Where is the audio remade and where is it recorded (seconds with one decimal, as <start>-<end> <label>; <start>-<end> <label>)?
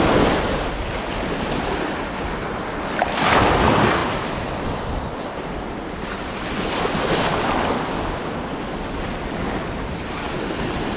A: 0.0-11.0 recorded